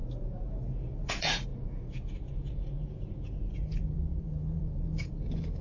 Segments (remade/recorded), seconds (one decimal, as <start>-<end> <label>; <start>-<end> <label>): 0.0-5.6 remade